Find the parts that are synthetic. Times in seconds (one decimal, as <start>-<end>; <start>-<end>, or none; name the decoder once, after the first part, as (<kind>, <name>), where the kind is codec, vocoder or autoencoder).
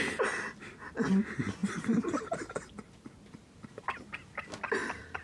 none